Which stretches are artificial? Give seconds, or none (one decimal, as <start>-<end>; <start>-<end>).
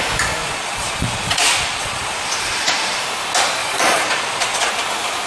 0.4-3.0; 3.6-4.7